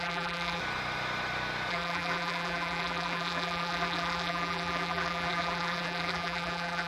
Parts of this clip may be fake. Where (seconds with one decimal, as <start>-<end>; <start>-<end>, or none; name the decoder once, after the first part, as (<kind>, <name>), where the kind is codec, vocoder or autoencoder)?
0.0-0.6 (vocoder, BigVGAN v2); 1.7-6.9